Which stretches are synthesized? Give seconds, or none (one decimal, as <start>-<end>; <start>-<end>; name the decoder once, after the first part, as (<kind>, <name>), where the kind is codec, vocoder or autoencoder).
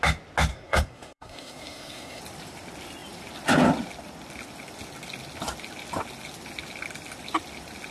0.5-2.2 (codec, SNAC)